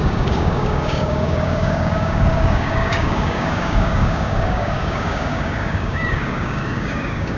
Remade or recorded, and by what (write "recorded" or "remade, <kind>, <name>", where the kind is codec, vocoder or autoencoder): remade, codec, DAC